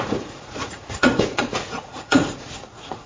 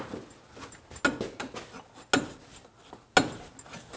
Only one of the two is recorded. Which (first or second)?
second